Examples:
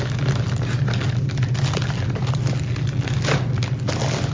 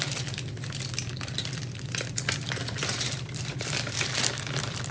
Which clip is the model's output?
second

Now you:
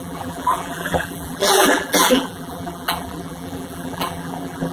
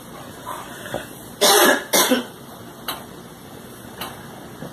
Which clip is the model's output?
first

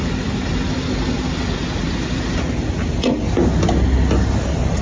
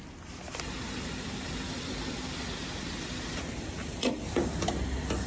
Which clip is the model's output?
second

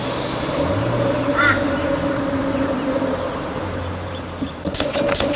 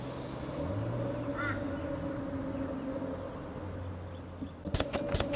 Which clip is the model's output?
first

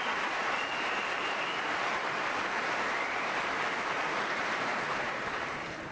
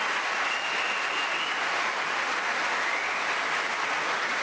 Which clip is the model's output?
first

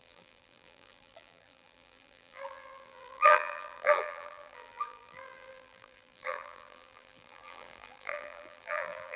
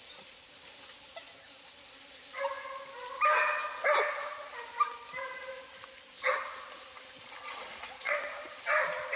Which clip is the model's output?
first